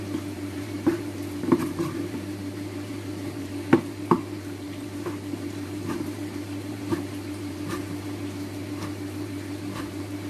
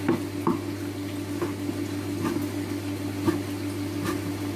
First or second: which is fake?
first